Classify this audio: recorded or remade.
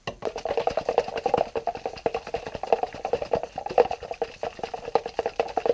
recorded